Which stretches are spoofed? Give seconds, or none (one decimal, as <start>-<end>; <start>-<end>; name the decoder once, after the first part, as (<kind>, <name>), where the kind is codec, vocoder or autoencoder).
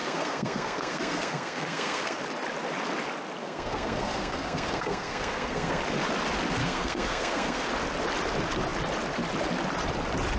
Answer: 0.0-2.2 (codec, SNAC); 3.4-5.8; 6.6-7.7